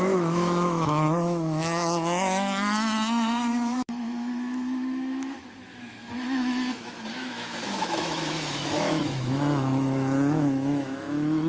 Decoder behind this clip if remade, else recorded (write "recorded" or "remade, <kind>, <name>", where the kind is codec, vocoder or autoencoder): remade, autoencoder, DAC-VAE